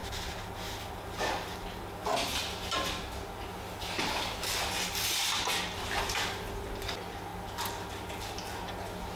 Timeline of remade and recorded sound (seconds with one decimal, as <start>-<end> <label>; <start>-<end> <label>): 0.0-9.2 recorded